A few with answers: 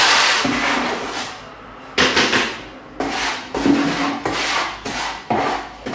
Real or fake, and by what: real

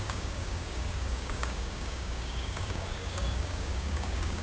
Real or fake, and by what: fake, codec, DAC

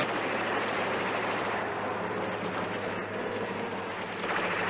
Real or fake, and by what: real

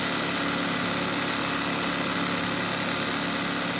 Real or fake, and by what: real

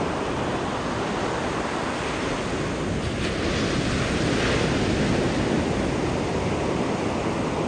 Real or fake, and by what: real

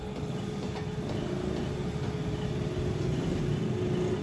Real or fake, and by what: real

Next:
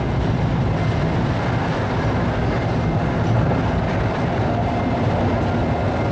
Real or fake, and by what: real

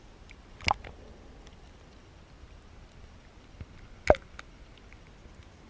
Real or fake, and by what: real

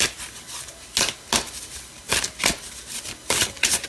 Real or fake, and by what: real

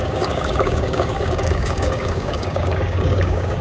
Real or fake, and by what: fake, codec, DAC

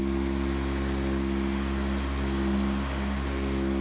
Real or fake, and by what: real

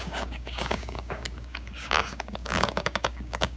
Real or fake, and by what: fake, codec, DAC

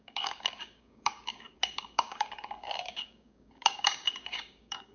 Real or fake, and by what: fake, codec, DAC